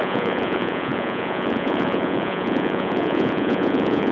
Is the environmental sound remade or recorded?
remade